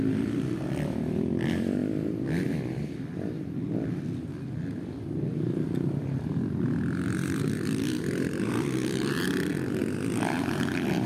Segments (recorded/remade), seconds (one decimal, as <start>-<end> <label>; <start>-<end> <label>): 0.0-1.8 remade; 1.8-4.8 recorded; 4.8-9.8 remade; 9.8-10.4 recorded; 10.4-11.1 remade